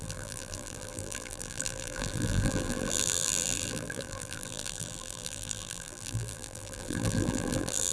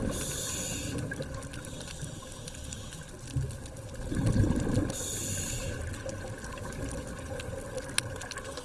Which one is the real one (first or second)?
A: second